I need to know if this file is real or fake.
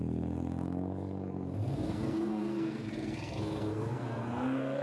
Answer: fake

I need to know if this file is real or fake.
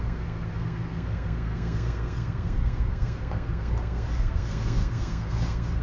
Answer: fake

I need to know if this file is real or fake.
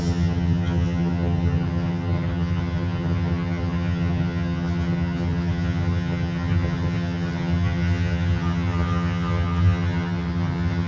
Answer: fake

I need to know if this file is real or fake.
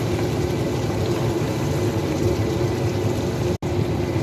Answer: real